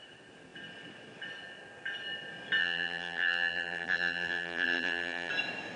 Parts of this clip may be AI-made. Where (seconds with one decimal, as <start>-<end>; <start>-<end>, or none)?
2.6-5.3

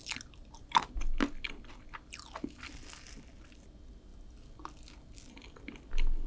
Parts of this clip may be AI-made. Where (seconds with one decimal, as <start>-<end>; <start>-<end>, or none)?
none